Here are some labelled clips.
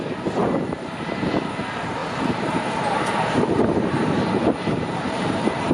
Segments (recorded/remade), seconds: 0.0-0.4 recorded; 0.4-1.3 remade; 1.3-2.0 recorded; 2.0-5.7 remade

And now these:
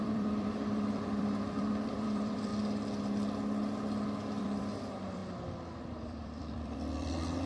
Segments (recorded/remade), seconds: 0.0-2.5 remade; 2.5-4.4 recorded; 4.4-5.2 remade; 5.2-5.8 recorded; 5.8-7.5 remade

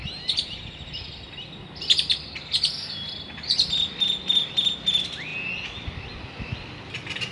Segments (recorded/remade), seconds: 0.0-7.3 recorded

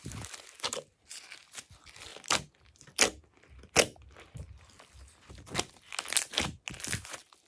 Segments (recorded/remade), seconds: 0.0-7.5 recorded

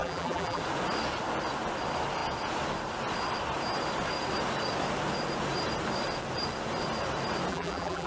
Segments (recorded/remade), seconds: 0.0-0.6 remade; 0.6-7.5 recorded; 7.5-8.1 remade

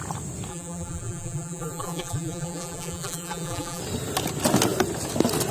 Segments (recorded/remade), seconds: 0.0-0.5 recorded; 0.5-3.8 remade; 3.8-5.5 recorded

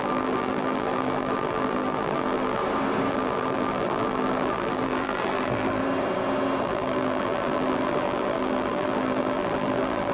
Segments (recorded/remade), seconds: 0.0-2.6 remade; 2.6-3.1 recorded; 3.1-5.8 remade; 5.8-6.6 recorded; 6.6-10.1 remade

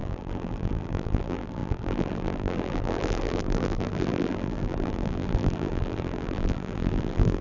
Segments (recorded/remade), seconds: 0.0-7.4 remade